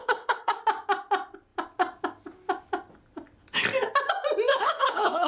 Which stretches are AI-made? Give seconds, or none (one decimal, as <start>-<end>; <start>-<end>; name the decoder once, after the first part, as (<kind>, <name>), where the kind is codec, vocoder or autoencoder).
0.0-0.6 (codec, HILCodec); 4.5-5.3